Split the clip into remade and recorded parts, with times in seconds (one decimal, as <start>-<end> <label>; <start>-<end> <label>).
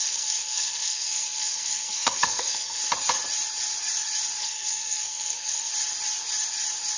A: 0.0-2.8 remade; 2.8-4.4 recorded; 4.4-5.7 remade; 5.7-7.0 recorded